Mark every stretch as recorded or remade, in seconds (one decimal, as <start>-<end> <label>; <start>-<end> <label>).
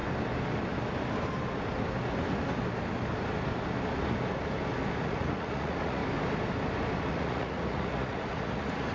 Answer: 0.0-5.0 recorded; 5.0-6.0 remade; 6.0-7.1 recorded; 7.1-8.9 remade